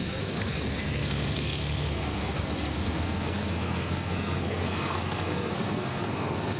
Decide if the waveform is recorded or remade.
remade